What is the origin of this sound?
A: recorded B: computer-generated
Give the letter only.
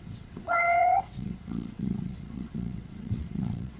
B